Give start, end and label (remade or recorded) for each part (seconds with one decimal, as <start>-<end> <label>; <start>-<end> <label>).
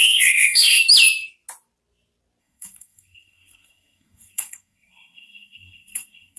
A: 0.0-0.8 remade; 0.8-2.4 recorded; 2.4-6.4 remade